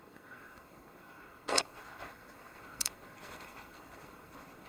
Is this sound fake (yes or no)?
yes